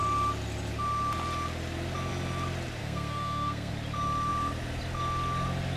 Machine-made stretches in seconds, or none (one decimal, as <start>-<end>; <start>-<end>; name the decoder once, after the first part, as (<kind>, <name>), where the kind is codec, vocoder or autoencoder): 2.8-3.7 (codec, SNAC)